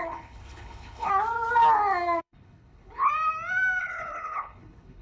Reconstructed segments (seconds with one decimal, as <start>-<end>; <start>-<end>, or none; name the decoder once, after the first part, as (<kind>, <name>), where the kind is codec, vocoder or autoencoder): 0.0-1.1 (codec, HILCodec); 2.2-3.1; 3.8-5.0